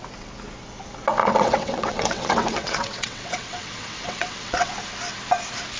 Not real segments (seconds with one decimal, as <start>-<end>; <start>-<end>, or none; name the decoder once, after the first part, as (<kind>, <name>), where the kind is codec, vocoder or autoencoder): 1.2-4.7 (vocoder, WaveNeXt)